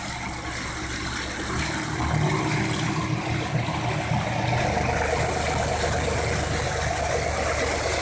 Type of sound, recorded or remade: recorded